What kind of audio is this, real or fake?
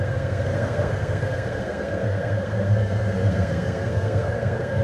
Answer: fake